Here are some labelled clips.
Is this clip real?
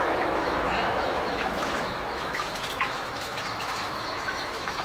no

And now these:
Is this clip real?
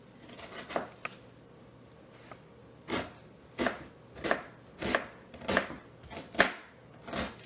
yes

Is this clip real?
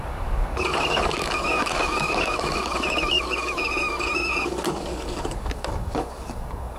no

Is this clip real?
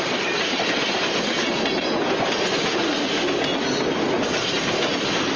yes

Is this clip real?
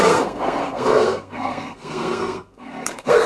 no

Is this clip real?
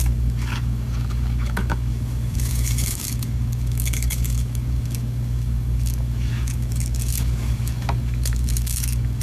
no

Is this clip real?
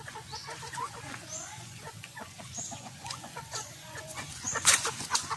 no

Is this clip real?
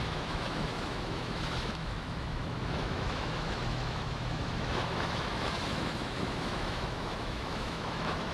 no